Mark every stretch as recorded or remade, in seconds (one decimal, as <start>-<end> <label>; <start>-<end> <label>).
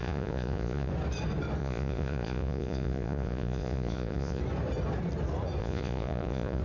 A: 0.0-0.9 remade; 0.9-1.6 recorded; 1.6-4.4 remade; 4.4-5.6 recorded; 5.6-6.6 remade